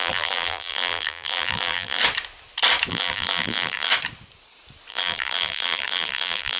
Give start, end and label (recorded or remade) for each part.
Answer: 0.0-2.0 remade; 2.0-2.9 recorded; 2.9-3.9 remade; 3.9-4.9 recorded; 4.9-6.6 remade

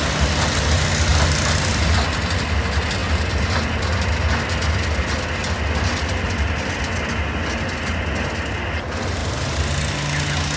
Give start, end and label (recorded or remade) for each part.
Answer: 0.0-10.6 recorded

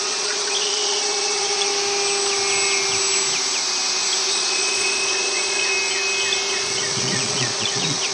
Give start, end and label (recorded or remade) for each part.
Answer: 0.0-1.7 remade; 1.7-4.3 recorded; 4.3-5.7 remade; 5.7-6.5 recorded; 6.5-8.1 remade

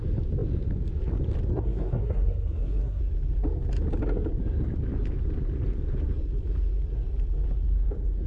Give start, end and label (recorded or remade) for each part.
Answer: 0.0-1.5 recorded; 1.5-3.0 remade; 3.0-8.3 recorded

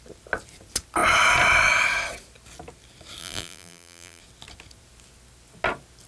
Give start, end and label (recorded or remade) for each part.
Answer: 0.0-3.2 recorded; 3.2-4.2 remade; 4.2-6.1 recorded

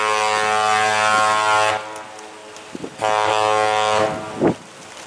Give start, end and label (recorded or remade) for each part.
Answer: 0.0-5.1 recorded

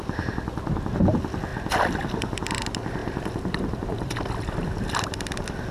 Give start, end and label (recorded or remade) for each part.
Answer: 0.0-1.5 recorded; 1.5-2.6 remade; 2.6-3.0 recorded; 3.0-4.9 remade; 4.9-5.7 recorded